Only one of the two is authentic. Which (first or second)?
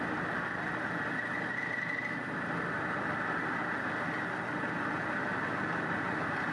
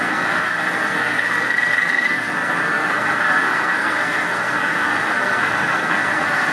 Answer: first